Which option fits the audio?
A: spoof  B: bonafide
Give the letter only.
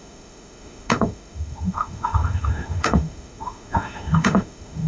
A